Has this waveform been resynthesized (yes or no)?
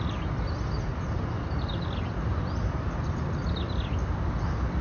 no